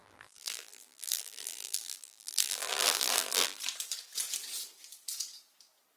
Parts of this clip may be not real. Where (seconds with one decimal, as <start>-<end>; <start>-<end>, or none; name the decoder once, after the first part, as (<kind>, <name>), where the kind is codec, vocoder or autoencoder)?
0.0-3.6 (vocoder, BigVGAN v2)